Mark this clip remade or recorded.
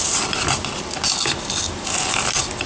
recorded